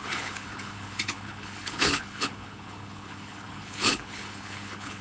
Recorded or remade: remade